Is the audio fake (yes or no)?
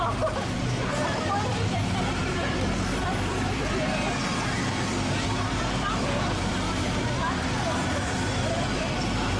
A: yes